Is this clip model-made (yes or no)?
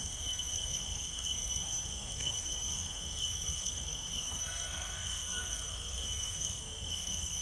yes